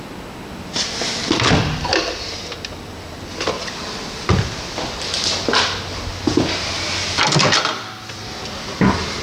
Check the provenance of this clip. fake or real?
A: real